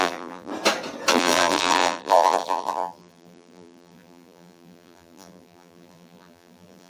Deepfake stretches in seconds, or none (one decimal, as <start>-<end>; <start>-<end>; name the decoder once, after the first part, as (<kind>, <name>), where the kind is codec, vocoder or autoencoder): 0.0-0.5 (vocoder, BigVGAN v2); 1.1-6.9